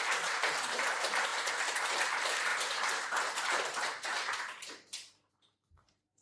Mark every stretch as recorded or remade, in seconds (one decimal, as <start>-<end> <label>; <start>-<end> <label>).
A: 0.0-1.3 remade; 1.3-1.8 recorded; 1.8-2.5 remade; 2.5-5.3 recorded; 5.3-6.2 remade